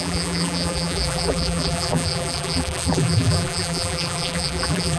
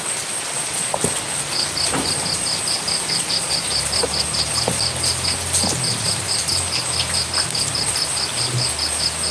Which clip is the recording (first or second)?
second